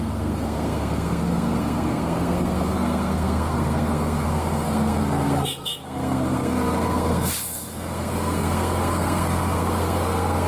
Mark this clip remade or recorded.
remade